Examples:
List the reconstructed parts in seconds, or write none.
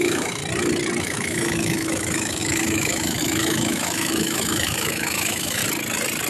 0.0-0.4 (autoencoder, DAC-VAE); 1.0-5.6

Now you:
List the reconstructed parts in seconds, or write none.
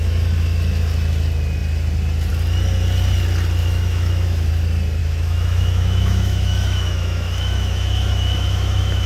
3.6-4.5 (autoencoder, DAC-VAE); 5.0-9.1